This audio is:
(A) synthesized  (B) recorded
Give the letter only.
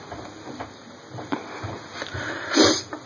B